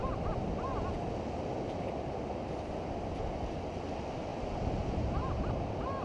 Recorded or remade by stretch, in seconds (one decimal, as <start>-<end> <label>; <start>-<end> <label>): 0.0-6.0 recorded

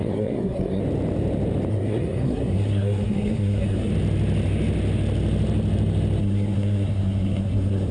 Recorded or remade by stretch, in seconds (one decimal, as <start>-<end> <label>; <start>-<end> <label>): 0.0-0.8 remade; 0.8-1.7 recorded; 1.7-3.9 remade; 3.9-6.2 recorded; 6.2-7.9 remade

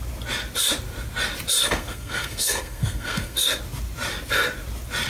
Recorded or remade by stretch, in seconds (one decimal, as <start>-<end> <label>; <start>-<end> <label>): 0.0-1.6 recorded; 1.6-3.6 remade; 3.6-5.1 recorded

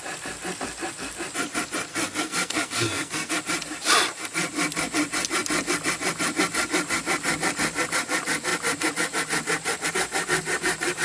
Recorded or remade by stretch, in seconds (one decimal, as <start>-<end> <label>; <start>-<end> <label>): 0.0-1.9 recorded; 1.9-3.3 remade; 3.3-11.0 recorded

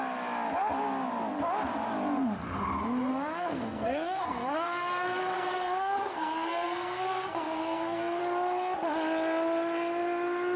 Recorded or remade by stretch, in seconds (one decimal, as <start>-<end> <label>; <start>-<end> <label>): 0.0-3.1 recorded; 3.1-8.2 remade; 8.2-10.6 recorded

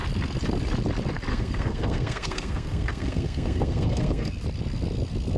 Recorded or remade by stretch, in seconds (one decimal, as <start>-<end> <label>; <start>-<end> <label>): 0.0-1.3 recorded; 1.3-4.3 remade; 4.3-5.4 recorded

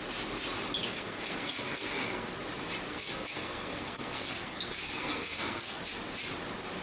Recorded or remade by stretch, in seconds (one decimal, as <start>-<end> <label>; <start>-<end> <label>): 0.0-0.8 recorded; 0.8-2.3 remade; 2.3-2.9 recorded; 2.9-5.8 remade; 5.8-6.8 recorded

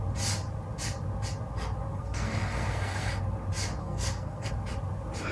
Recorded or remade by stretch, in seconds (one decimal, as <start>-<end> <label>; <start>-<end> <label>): 0.0-1.9 recorded; 1.9-3.2 remade; 3.2-3.8 recorded; 3.8-4.5 remade; 4.5-5.3 recorded